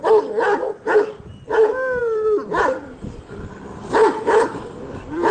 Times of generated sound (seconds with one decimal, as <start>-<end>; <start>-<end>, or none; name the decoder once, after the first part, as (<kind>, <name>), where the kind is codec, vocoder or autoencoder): 2.0-5.3 (vocoder, BigVGAN v2)